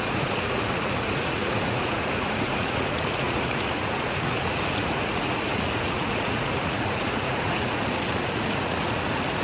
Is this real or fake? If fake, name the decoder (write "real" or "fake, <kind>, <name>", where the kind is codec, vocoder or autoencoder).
fake, vocoder, Vocos